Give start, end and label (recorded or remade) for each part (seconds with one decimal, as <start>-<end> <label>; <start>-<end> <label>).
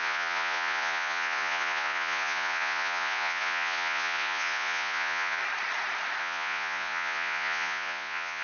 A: 0.0-5.4 remade; 5.4-6.2 recorded; 6.2-8.4 remade